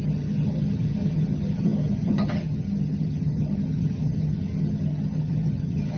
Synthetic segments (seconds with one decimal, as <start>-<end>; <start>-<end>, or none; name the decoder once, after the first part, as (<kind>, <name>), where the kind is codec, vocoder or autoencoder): 0.0-6.0 (vocoder, HiFi-GAN)